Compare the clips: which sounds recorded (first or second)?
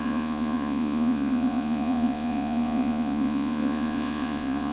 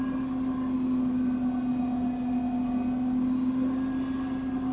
second